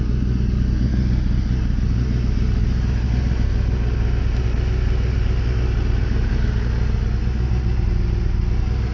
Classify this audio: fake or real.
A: real